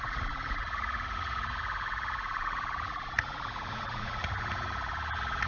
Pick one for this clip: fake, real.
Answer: fake